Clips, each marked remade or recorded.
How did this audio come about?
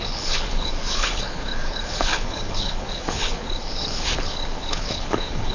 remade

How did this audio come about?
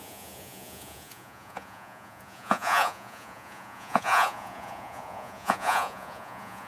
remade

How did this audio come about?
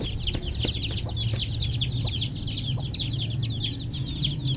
recorded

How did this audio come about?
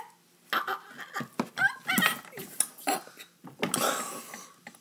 recorded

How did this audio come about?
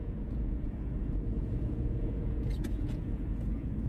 remade